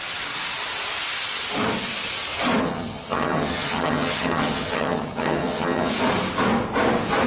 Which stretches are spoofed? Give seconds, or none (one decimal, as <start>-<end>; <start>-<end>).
2.6-5.9